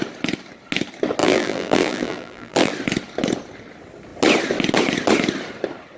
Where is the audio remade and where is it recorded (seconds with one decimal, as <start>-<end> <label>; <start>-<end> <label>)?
0.0-1.2 recorded; 1.2-2.7 remade; 2.7-6.0 recorded